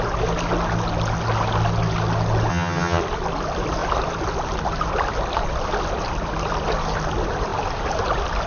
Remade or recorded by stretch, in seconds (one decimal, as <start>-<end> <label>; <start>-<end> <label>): 0.0-2.5 recorded; 2.5-3.0 remade; 3.0-8.5 recorded